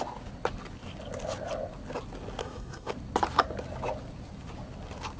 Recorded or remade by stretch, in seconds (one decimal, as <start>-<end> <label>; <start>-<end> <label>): 0.0-2.4 recorded; 2.4-2.9 remade; 2.9-5.2 recorded